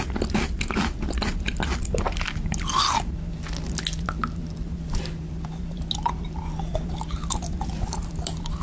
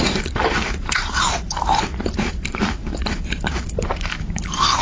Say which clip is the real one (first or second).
first